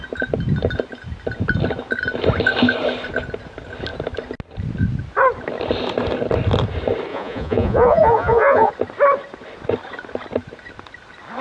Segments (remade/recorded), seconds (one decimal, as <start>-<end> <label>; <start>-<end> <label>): 0.0-7.1 recorded; 7.1-8.7 remade; 8.7-11.4 recorded